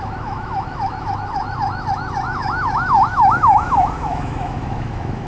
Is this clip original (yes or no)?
no